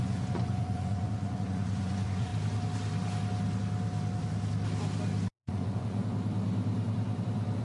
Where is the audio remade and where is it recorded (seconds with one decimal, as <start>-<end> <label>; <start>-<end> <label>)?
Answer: 0.0-2.3 remade; 2.3-5.3 recorded; 5.3-6.0 remade; 6.0-7.6 recorded